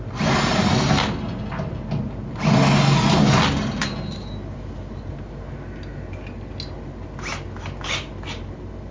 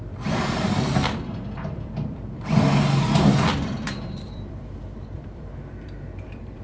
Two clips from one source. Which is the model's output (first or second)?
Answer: second